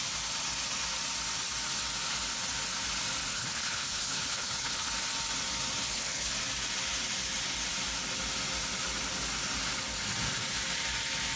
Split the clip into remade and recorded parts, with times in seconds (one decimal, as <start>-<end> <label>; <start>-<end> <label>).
0.0-3.3 recorded; 3.3-4.9 remade; 4.9-5.8 recorded; 5.8-6.3 remade; 6.3-11.4 recorded